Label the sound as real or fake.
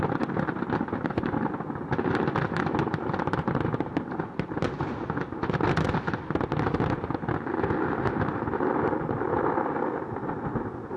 real